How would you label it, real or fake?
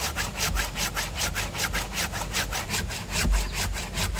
real